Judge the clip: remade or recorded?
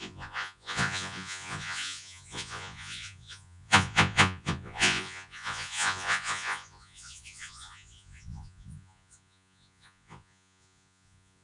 remade